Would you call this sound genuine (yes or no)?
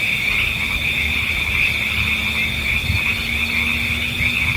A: yes